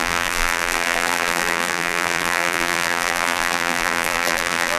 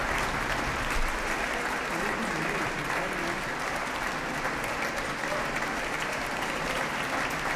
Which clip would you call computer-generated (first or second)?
first